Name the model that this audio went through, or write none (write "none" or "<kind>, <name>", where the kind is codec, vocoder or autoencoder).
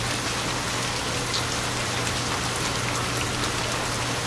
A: none